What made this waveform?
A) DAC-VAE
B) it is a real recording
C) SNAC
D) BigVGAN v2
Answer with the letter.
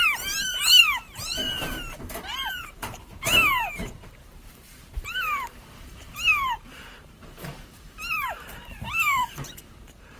D